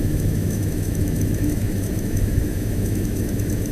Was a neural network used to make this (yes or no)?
yes